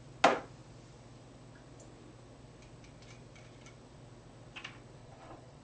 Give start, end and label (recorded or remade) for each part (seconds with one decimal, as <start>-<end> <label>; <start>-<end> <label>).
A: 0.0-5.0 recorded; 5.0-5.6 remade